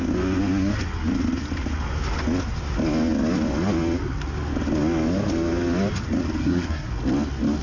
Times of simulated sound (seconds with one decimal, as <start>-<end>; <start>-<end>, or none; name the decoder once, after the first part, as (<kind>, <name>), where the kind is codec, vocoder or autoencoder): 6.4-6.9 (codec, SNAC)